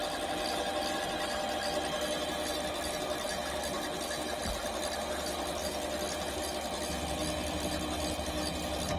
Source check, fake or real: real